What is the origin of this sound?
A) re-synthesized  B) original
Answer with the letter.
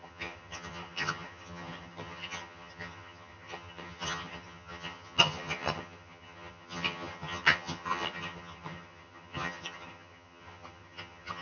A